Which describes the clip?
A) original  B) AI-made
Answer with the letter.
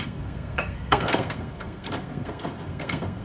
B